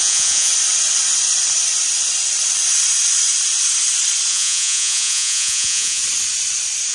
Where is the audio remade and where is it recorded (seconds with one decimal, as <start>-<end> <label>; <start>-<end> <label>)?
0.0-0.5 remade; 0.5-4.3 recorded; 4.3-6.0 remade; 6.0-6.9 recorded